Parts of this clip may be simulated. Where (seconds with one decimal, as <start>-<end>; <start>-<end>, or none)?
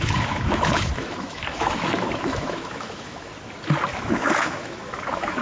0.0-3.3; 4.0-5.4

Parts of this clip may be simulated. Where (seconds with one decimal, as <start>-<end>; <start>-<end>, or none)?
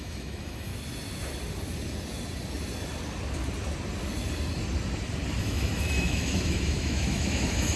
0.0-0.7; 5.4-7.8